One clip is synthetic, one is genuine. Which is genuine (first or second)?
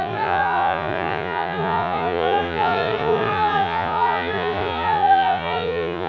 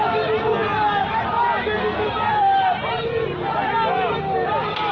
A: second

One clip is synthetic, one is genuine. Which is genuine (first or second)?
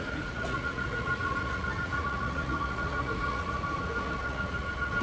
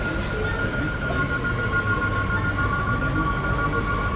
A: second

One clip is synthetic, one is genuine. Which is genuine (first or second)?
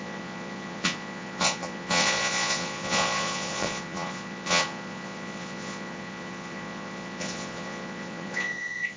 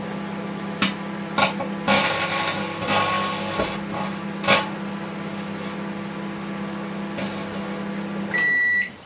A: second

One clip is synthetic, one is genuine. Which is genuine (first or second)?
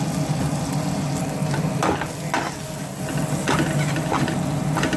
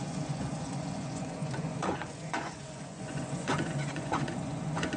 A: first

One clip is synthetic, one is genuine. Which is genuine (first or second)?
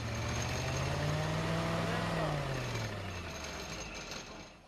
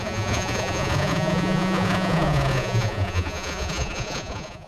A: first